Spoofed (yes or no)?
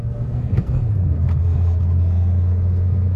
yes